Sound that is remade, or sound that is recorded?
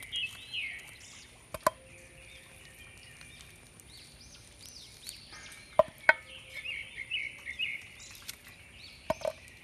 recorded